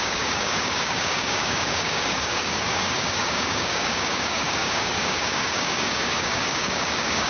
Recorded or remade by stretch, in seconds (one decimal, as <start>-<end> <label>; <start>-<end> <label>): 0.0-7.3 remade